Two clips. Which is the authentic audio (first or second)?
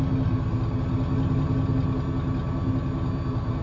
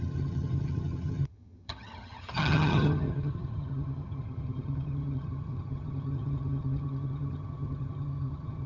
first